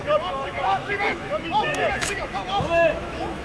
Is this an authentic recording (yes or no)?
no